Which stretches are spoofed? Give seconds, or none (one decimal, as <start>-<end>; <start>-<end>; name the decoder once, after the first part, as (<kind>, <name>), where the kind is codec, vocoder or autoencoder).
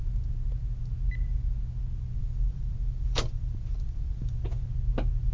2.2-4.6 (vocoder, BigVGAN v2)